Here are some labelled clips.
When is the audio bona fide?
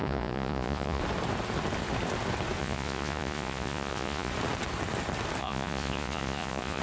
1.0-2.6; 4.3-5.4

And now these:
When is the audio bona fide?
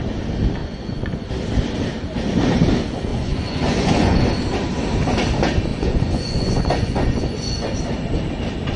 0.0-0.6; 1.3-3.1; 4.3-5.7; 7.8-8.8